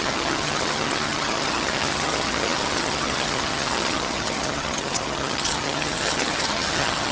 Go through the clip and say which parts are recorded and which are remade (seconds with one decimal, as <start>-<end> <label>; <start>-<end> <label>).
0.0-7.1 remade